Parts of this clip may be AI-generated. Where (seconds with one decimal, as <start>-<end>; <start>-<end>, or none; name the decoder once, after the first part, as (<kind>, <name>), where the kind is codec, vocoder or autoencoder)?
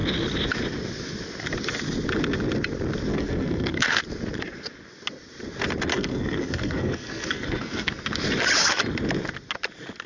3.1-4.0 (codec, SNAC); 5.9-8.0